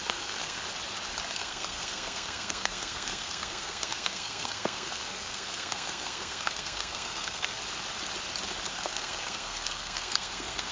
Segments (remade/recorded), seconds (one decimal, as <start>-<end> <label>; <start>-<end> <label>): 0.0-0.6 remade; 0.6-1.3 recorded; 1.3-7.6 remade; 7.6-8.7 recorded; 8.7-10.7 remade